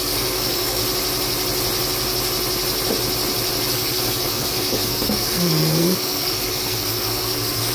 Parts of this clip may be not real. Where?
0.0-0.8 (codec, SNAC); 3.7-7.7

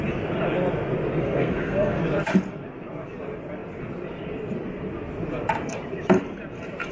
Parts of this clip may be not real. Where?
1.2-2.0 (codec, SNAC)

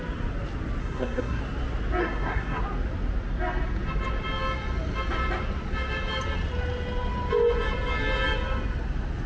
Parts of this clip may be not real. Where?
0.8-1.4 (codec, SNAC); 2.0-2.6

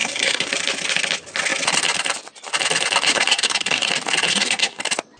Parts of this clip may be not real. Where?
0.0-0.5 (codec, SNAC); 3.1-3.9; 4.3-4.8

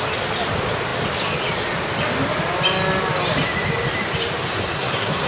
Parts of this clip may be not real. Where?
4.5-5.3 (codec, SNAC)

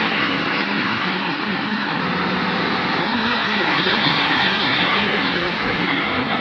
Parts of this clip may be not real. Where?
0.0-2.0 (codec, SNAC); 3.0-6.4

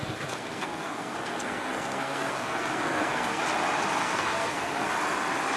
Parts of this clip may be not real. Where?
0.0-3.4 (codec, SNAC); 4.0-4.9